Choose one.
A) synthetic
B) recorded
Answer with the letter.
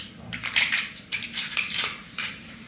A